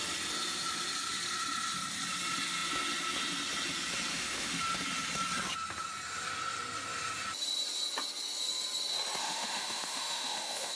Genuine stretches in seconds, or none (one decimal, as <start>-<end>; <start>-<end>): 0.0-4.1; 4.6-9.2